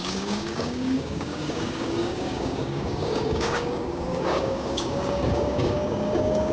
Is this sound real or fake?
fake